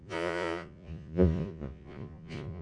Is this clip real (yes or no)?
no